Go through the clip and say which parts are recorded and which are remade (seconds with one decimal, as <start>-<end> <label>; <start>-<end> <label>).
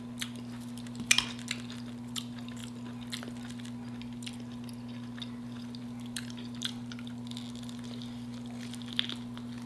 0.0-9.7 recorded